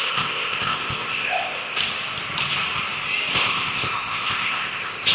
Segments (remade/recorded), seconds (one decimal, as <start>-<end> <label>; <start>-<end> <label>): 0.0-1.8 remade; 1.8-3.3 recorded; 3.3-5.1 remade